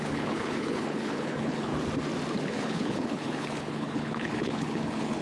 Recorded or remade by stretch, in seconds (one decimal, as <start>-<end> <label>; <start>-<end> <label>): 0.0-1.7 remade; 1.7-2.5 recorded; 2.5-5.2 remade